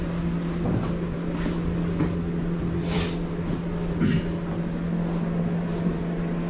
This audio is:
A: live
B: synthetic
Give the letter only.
A